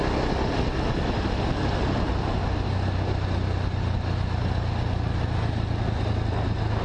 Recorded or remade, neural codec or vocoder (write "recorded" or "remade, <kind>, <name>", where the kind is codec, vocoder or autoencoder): recorded